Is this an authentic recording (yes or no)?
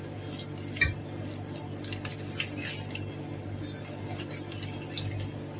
yes